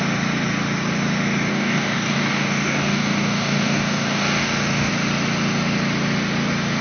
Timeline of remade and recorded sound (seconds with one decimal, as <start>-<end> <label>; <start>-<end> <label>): 0.0-1.5 recorded; 1.5-4.9 remade; 4.9-6.8 recorded